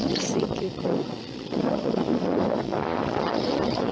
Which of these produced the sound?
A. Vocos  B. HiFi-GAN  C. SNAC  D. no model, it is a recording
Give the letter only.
A